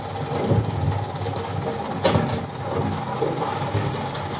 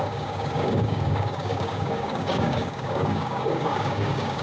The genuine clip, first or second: first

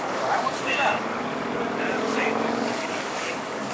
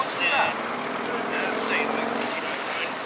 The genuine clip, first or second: second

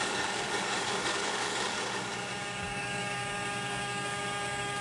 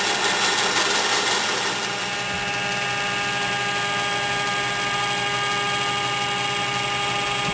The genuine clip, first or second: second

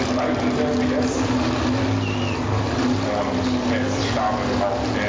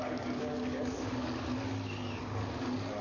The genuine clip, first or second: first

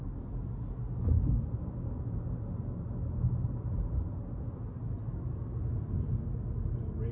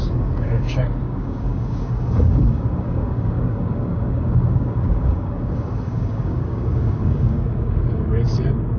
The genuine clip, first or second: first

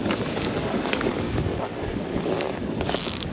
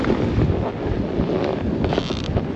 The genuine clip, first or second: second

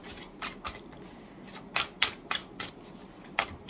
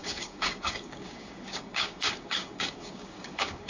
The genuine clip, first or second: first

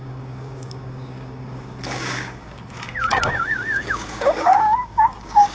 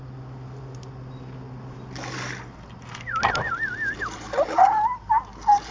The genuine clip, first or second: second